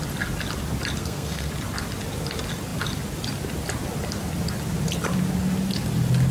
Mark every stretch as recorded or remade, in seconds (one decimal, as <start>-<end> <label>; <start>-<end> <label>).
0.0-1.0 recorded; 1.0-1.5 remade; 1.5-6.3 recorded